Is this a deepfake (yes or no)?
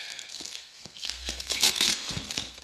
yes